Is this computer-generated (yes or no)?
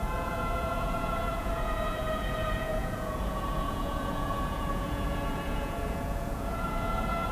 yes